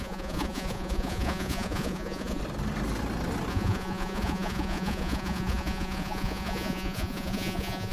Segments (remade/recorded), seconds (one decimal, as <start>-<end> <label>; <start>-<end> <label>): 0.0-2.4 remade; 2.4-3.5 recorded; 3.5-7.9 remade